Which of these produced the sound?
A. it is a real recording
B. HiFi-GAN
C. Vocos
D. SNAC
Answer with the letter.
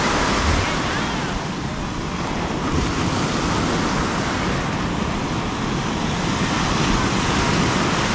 A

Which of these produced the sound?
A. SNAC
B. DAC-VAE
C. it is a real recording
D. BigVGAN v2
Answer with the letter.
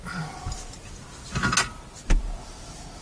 C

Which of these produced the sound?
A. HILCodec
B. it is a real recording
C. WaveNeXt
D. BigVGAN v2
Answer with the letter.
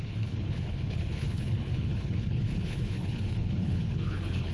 A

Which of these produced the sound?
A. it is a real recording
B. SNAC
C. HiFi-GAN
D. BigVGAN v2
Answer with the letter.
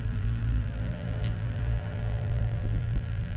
D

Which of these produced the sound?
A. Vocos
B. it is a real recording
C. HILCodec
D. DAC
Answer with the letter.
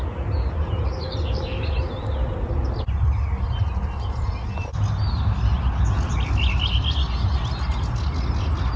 B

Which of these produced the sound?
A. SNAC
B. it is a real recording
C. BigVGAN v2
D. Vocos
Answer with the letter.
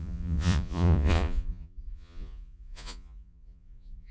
D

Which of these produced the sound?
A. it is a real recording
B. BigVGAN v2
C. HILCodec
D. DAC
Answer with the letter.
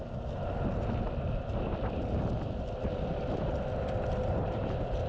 B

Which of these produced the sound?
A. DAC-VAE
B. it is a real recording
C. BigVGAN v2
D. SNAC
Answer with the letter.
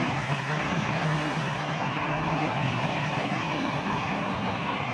D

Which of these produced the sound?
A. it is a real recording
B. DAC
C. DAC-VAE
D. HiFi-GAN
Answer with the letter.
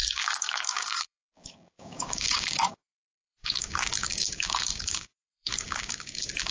B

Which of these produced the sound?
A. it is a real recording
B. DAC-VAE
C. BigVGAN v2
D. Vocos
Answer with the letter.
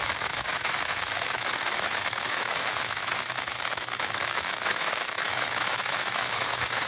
B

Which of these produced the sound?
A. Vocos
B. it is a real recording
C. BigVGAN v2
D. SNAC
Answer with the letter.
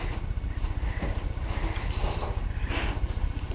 B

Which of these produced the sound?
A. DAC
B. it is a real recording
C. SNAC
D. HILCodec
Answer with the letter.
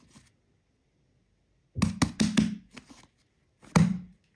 B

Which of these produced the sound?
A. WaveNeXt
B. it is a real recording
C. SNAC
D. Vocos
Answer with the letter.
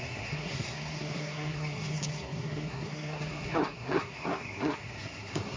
C